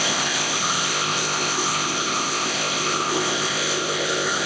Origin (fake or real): fake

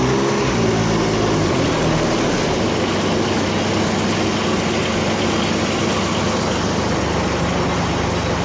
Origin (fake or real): real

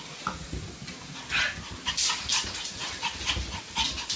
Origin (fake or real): real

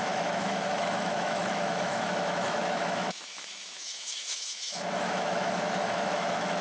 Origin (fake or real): fake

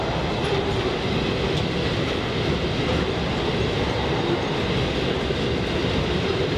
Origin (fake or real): real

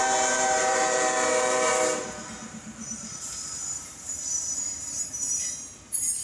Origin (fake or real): fake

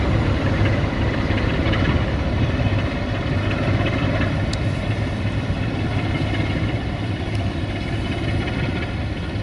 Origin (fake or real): real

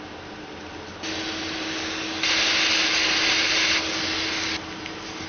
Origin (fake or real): real